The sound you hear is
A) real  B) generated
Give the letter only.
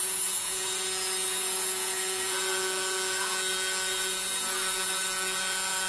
B